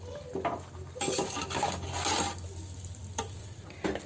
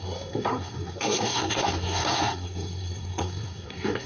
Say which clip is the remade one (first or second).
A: second